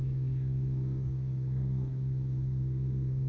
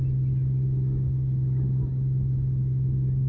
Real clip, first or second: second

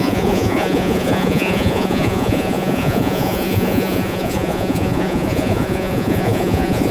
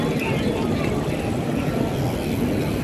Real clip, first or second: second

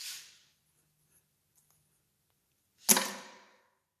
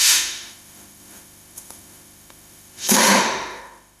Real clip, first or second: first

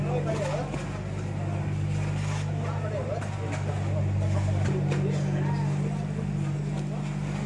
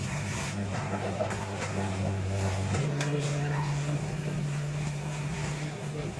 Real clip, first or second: first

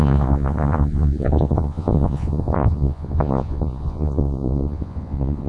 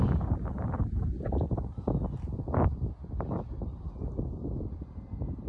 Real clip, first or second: second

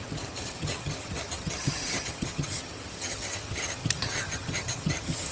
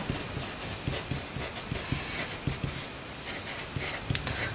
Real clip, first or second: second